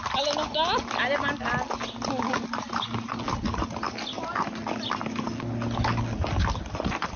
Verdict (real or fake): real